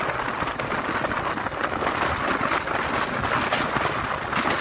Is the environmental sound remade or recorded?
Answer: recorded